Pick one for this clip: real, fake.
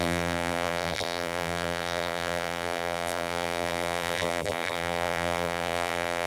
fake